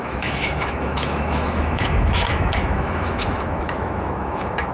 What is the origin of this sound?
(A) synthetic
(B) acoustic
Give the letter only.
A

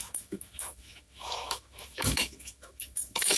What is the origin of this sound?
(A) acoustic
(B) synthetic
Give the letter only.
B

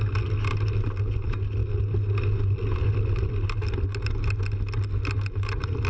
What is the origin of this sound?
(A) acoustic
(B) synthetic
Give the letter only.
A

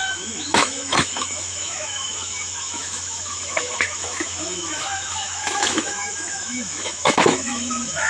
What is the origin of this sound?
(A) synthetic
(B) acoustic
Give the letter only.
A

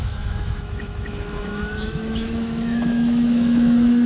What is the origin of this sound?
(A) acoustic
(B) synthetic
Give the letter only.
B